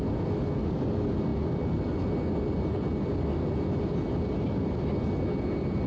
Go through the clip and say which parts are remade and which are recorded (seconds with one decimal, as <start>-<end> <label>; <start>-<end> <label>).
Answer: 0.0-5.9 recorded